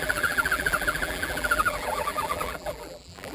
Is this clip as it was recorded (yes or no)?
no